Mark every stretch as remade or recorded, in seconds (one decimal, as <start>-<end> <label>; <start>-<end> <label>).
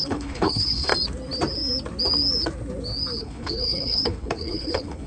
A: 0.0-0.9 remade; 0.9-3.2 recorded; 3.2-5.1 remade